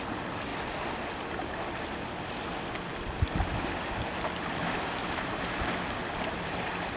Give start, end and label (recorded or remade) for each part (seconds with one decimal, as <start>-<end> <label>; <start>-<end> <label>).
0.0-7.0 recorded